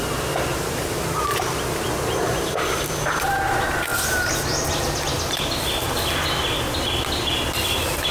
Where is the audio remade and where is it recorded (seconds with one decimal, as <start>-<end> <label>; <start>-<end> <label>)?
0.0-0.5 recorded; 0.5-3.3 remade; 3.3-8.1 recorded